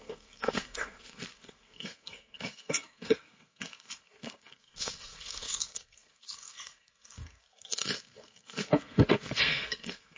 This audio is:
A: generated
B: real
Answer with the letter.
A